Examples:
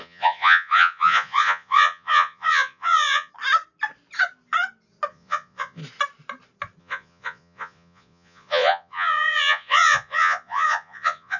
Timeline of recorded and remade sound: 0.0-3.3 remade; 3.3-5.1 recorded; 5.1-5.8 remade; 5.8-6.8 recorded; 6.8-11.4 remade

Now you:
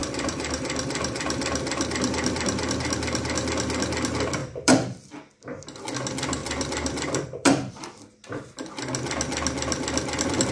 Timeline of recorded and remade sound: 0.0-2.8 remade; 2.8-4.4 recorded; 4.4-5.1 remade; 5.1-6.4 recorded; 6.4-8.8 remade; 8.8-10.5 recorded

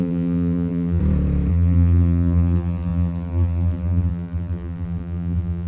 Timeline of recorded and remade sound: 0.0-1.0 remade; 1.0-1.5 recorded; 1.5-5.7 remade

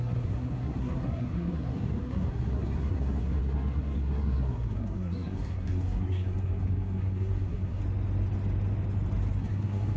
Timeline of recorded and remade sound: 0.0-7.8 remade; 7.8-9.4 recorded; 9.4-10.0 remade

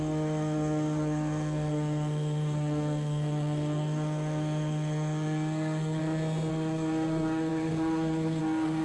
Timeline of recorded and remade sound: 0.0-6.0 remade; 6.0-6.5 recorded; 6.5-8.8 remade